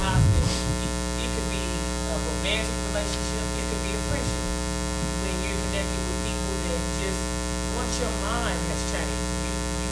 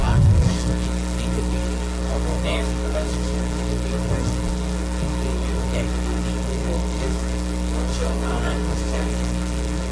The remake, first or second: second